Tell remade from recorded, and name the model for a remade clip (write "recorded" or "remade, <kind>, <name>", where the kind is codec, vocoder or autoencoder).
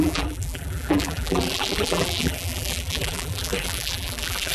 remade, vocoder, BigVGAN v2